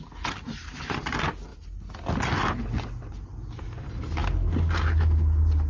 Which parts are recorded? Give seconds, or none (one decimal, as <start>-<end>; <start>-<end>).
0.0-5.7

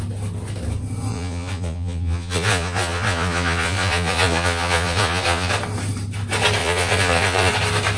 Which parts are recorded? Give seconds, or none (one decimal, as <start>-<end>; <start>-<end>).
0.0-1.1; 5.5-6.6; 7.5-8.0

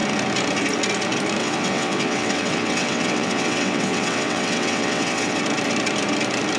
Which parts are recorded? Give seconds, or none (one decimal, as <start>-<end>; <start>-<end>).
0.0-1.4; 5.4-6.6

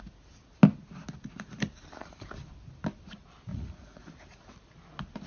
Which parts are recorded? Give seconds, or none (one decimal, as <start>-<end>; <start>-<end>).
0.0-3.5; 4.1-5.3

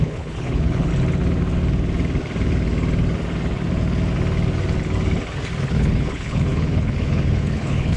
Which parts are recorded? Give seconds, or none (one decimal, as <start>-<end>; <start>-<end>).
0.9-5.7

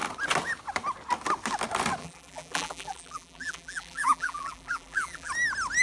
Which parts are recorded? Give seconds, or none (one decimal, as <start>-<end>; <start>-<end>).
0.0-2.0; 5.3-5.8

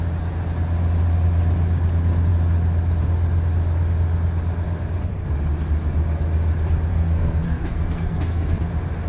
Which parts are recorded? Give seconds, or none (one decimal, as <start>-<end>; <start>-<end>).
0.0-6.9; 8.6-9.1

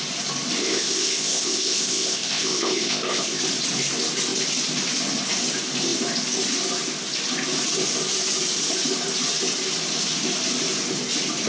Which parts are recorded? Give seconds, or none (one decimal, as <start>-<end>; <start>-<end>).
0.0-0.6; 3.4-11.5